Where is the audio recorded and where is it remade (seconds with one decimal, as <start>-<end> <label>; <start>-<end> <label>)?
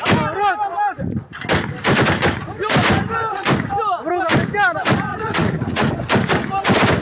0.0-5.1 recorded; 5.1-5.9 remade; 5.9-7.0 recorded